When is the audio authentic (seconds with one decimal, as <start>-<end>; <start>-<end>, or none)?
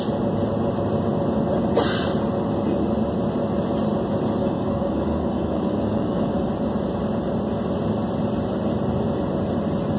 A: 0.0-4.4; 6.5-10.0